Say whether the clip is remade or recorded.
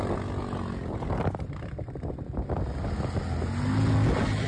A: recorded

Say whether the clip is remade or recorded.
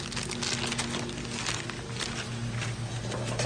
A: recorded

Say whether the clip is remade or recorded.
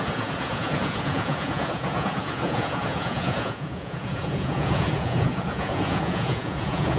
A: remade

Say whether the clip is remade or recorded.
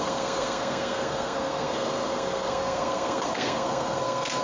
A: remade